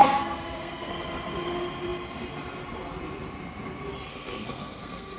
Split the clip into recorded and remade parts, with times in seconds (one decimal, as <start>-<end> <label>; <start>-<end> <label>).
0.0-0.9 remade; 0.9-4.1 recorded; 4.1-5.2 remade